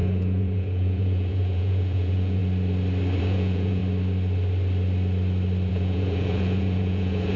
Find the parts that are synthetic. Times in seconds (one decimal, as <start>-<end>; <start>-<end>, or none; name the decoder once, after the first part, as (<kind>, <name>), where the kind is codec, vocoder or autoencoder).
0.0-2.4 (vocoder, Vocos); 3.2-3.8; 5.7-7.4